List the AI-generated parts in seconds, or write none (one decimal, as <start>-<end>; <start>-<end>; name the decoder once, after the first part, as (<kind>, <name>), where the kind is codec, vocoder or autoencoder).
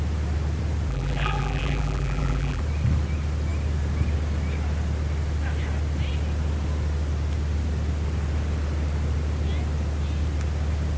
0.9-2.6 (vocoder, BigVGAN v2)